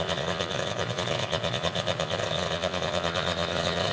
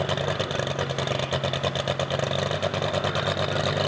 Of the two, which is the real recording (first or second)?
second